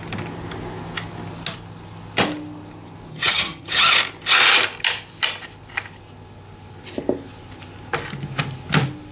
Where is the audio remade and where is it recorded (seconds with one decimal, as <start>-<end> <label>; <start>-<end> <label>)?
0.0-3.1 recorded; 3.1-3.9 remade; 3.9-9.1 recorded